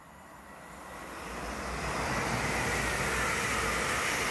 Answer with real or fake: real